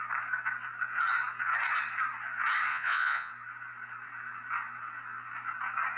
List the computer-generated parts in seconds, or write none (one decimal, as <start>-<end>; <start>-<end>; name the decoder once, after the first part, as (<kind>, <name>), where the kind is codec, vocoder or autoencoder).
2.7-3.3 (vocoder, Vocos)